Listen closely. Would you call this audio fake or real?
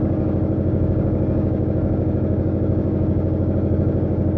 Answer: fake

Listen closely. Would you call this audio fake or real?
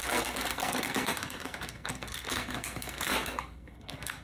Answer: fake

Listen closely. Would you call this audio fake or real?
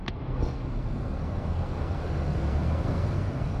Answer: fake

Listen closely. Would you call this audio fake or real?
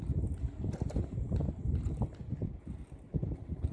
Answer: real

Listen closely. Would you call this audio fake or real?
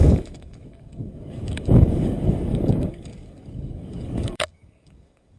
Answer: fake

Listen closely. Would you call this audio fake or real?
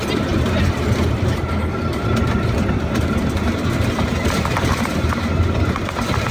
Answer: fake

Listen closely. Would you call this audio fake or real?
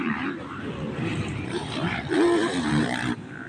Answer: fake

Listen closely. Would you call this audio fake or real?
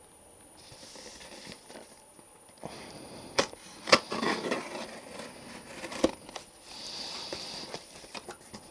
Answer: fake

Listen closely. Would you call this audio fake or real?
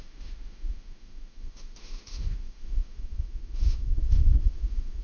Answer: fake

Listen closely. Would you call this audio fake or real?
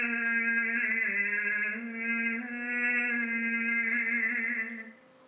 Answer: real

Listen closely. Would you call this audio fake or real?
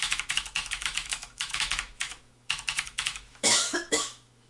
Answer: fake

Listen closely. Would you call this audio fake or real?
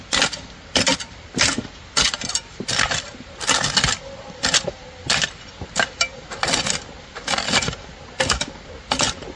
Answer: real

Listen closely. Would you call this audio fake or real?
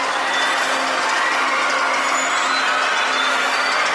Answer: real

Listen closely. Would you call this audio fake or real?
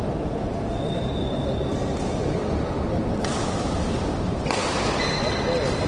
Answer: real